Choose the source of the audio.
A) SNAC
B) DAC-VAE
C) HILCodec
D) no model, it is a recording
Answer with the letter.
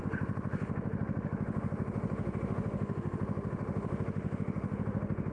B